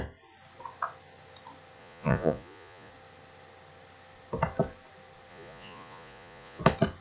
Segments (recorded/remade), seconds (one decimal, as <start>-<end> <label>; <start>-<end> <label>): 0.0-1.8 recorded; 1.8-2.9 remade; 2.9-5.3 recorded; 5.3-6.6 remade; 6.6-7.0 recorded